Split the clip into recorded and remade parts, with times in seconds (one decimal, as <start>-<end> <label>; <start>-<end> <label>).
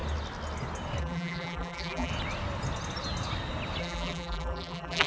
0.0-1.0 recorded; 1.0-2.1 remade; 2.1-3.8 recorded; 3.8-5.1 remade